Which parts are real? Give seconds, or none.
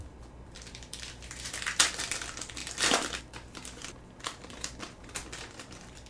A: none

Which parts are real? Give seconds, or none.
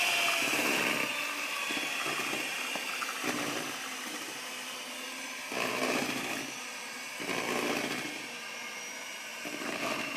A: 0.0-9.3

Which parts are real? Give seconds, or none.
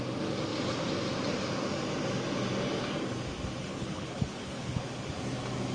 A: 0.0-3.6; 4.8-5.7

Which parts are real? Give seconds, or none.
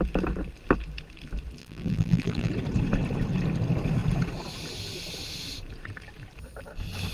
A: 0.0-1.6; 2.5-7.1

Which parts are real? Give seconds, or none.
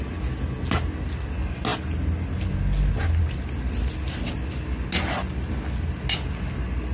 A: 0.0-6.9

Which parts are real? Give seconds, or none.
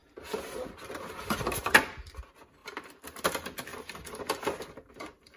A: 0.0-2.6; 3.2-3.7; 4.6-5.4